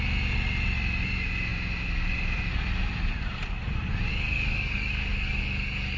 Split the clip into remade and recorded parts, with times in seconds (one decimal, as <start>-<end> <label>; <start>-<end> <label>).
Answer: 0.0-4.1 recorded; 4.1-6.0 remade